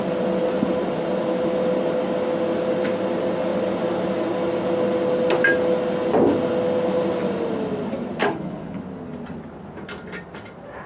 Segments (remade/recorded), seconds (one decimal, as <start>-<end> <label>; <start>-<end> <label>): 0.0-8.2 recorded; 8.2-8.8 remade; 8.8-10.9 recorded